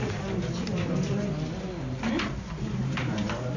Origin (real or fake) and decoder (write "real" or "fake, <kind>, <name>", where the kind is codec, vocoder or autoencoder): real